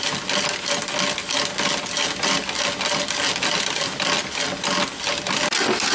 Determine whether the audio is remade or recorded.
recorded